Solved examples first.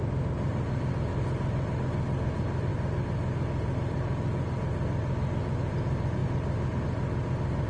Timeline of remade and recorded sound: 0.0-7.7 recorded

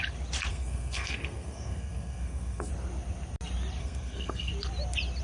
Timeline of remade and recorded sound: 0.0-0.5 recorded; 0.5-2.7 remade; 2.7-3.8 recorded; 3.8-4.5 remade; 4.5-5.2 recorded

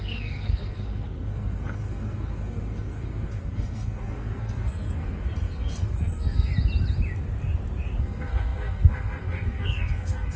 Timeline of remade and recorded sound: 0.0-6.5 remade; 6.5-8.0 recorded; 8.0-10.4 remade